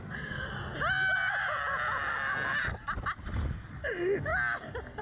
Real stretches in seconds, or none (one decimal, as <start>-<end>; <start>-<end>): 0.0-5.0

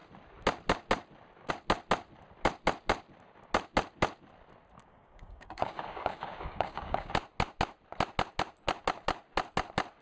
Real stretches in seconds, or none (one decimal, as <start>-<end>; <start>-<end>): 0.0-4.9; 7.1-10.0

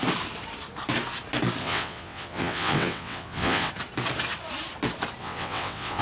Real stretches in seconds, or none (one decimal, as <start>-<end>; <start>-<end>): 0.0-1.6; 3.7-5.2